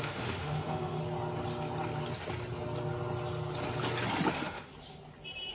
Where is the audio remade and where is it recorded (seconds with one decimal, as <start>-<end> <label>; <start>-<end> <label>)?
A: 0.0-1.0 remade; 1.0-4.3 recorded; 4.3-4.7 remade; 4.7-5.5 recorded